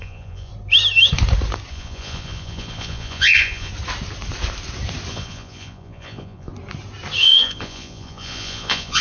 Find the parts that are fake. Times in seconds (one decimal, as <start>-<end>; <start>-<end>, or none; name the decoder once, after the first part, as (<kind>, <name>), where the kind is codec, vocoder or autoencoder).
0.0-0.5 (vocoder, Vocos); 1.7-3.7; 5.1-6.5; 7.2-9.0